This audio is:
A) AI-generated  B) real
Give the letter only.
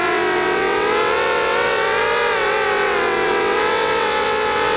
A